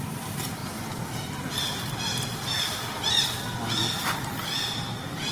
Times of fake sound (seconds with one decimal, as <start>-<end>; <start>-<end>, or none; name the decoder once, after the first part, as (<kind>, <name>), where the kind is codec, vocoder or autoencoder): none